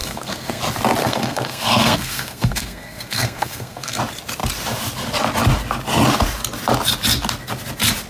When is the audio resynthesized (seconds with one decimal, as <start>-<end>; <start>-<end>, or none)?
0.0-0.6; 1.0-4.0